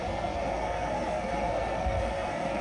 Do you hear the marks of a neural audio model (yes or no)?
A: yes